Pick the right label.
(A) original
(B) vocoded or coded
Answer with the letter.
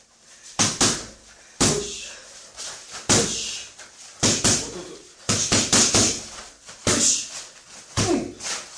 A